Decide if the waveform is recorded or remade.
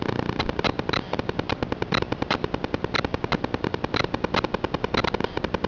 remade